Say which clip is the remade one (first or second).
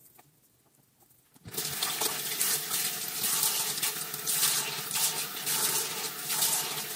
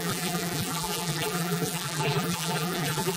second